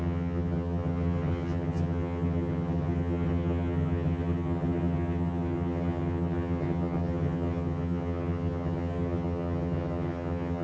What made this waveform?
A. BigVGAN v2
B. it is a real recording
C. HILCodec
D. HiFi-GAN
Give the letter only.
D